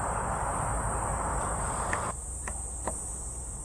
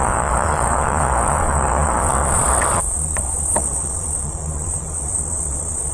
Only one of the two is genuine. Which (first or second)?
first